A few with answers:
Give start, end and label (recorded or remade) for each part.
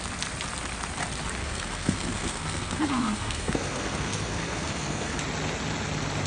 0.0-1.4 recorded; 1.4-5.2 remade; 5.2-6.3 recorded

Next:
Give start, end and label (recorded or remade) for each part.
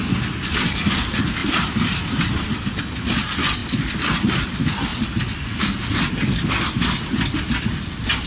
0.0-1.4 recorded; 1.4-2.8 remade; 2.8-8.3 recorded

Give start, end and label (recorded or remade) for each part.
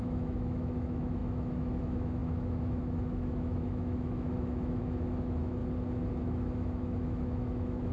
0.0-5.6 remade; 5.6-6.1 recorded; 6.1-7.9 remade